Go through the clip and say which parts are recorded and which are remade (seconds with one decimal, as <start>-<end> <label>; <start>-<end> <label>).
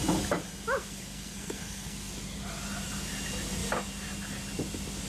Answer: 0.0-0.8 recorded; 0.8-2.1 remade; 2.1-5.1 recorded